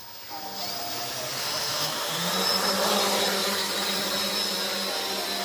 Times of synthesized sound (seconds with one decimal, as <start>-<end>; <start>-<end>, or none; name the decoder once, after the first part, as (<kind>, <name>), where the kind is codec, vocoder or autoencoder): 1.4-2.3 (autoencoder, DAC-VAE)